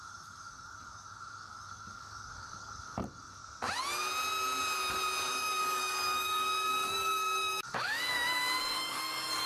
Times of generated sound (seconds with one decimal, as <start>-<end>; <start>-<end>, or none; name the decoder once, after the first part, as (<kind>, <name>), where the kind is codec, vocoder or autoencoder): 0.0-3.4 (codec, DAC); 5.3-9.5